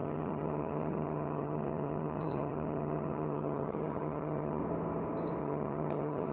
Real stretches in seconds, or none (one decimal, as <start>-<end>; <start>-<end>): 4.6-5.4